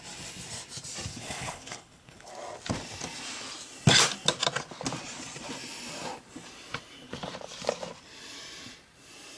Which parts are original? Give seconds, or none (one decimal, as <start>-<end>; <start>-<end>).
0.0-1.1; 2.3-9.4

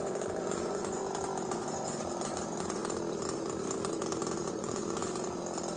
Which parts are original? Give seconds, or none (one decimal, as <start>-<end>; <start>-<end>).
1.0-1.5; 2.8-4.5; 5.0-5.8

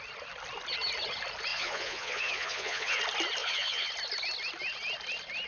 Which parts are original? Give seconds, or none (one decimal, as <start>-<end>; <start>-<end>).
0.0-1.5; 3.0-3.4; 3.9-5.5

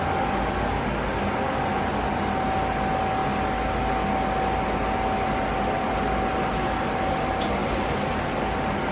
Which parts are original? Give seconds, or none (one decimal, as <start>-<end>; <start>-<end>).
0.0-8.9

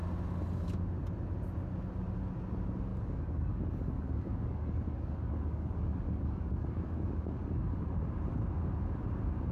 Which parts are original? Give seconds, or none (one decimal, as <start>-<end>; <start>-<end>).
0.0-2.9; 8.0-9.5

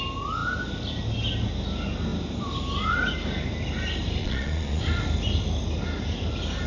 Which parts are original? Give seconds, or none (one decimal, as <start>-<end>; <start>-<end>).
0.0-4.2; 4.8-6.7

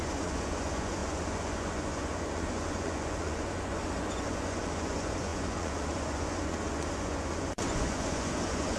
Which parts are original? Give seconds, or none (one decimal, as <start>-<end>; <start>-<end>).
none